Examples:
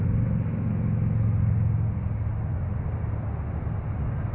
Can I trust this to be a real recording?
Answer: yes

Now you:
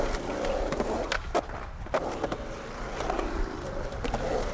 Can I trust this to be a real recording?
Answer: yes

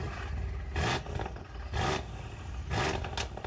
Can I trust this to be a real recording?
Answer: yes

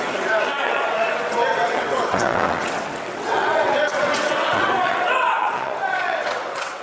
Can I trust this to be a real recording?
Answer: no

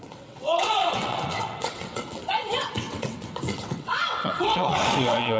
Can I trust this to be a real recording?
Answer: no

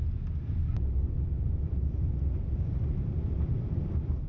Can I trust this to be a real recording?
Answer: yes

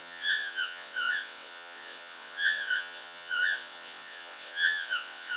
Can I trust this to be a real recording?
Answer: no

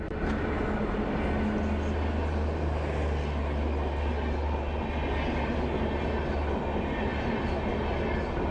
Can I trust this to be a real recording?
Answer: yes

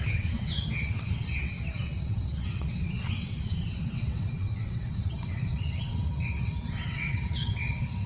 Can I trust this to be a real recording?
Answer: no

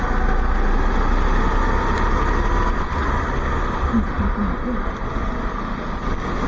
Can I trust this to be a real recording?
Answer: yes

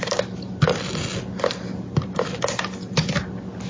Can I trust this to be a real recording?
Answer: yes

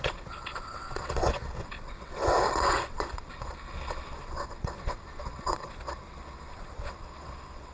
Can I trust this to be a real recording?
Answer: no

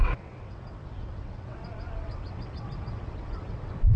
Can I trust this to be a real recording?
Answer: no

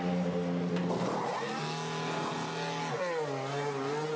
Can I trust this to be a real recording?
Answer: yes